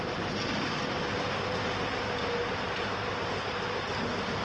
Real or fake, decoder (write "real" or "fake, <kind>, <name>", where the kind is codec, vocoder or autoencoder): real